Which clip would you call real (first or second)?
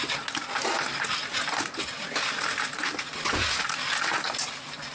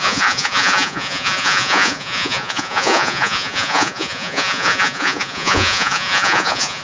first